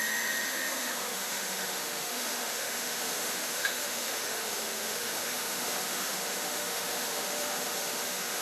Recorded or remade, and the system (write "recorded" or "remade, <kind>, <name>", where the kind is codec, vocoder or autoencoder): remade, autoencoder, DAC-VAE